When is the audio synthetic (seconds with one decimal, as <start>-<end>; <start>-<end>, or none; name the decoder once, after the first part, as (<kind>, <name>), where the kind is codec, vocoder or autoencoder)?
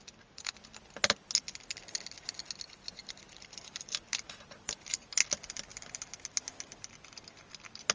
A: 3.0-4.9 (vocoder, BigVGAN v2)